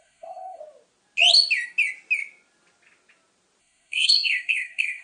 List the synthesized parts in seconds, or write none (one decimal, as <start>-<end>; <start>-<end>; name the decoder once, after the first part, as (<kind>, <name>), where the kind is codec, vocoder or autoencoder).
0.0-0.6 (codec, SNAC); 3.6-5.0